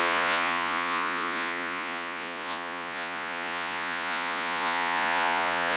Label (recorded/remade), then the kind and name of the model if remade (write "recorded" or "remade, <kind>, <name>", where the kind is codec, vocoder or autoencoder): remade, vocoder, Vocos